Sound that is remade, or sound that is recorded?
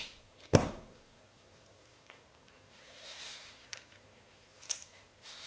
remade